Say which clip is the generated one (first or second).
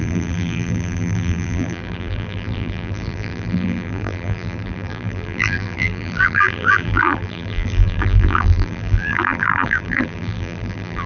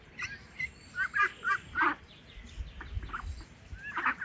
first